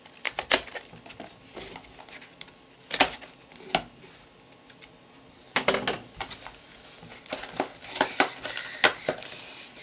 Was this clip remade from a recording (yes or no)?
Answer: no